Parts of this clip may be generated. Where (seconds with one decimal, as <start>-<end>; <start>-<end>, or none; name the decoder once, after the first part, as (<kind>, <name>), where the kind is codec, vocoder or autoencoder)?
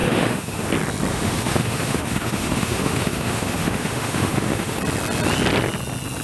0.0-0.7 (autoencoder, DAC-VAE); 1.1-4.8